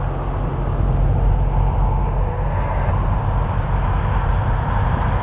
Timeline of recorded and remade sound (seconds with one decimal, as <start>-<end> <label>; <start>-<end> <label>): 0.0-2.3 recorded; 2.3-2.9 remade; 2.9-5.2 recorded